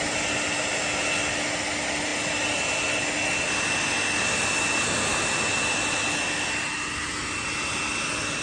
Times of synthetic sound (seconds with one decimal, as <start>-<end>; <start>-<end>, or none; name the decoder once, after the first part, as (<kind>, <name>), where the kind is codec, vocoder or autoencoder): none